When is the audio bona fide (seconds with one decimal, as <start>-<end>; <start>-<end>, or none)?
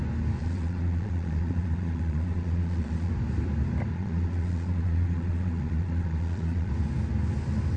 0.0-0.4; 3.1-3.9; 6.7-7.8